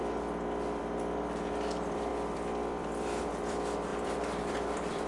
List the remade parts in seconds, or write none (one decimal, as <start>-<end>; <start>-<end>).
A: 0.8-5.1